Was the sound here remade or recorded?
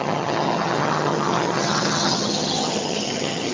remade